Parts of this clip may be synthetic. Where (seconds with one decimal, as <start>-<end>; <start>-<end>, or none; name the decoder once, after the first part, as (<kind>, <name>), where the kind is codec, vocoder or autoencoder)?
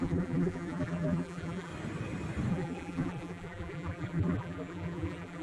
0.0-1.7 (vocoder, BigVGAN v2); 2.5-5.4